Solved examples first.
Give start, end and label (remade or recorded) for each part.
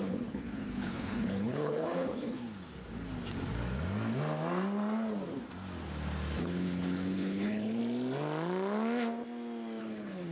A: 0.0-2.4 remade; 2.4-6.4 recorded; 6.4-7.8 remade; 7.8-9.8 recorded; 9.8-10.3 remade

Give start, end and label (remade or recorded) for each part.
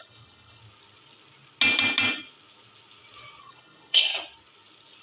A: 0.0-0.6 remade; 0.6-3.4 recorded; 3.4-4.1 remade; 4.1-5.0 recorded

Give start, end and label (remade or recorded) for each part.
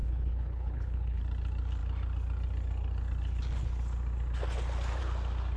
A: 0.0-1.2 remade; 1.2-5.6 recorded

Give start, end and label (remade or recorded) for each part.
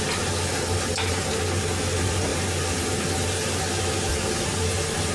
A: 0.0-5.1 recorded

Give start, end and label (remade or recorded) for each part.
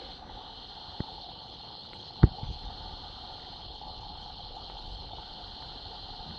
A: 0.0-1.1 recorded; 1.1-2.7 remade; 2.7-3.6 recorded; 3.6-5.2 remade; 5.2-6.4 recorded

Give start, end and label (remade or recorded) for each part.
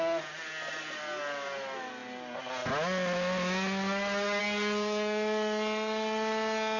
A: 0.0-6.8 recorded